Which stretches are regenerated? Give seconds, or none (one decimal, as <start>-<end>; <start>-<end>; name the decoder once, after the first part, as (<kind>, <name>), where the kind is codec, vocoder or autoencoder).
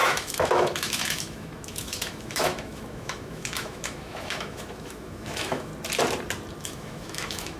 0.0-5.7 (autoencoder, DAC-VAE); 6.6-7.6